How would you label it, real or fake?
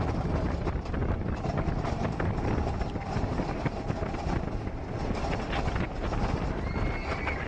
real